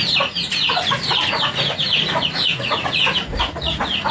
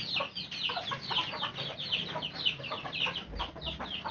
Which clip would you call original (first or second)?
second